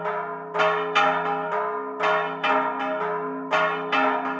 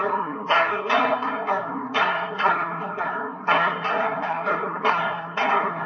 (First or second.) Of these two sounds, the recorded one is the first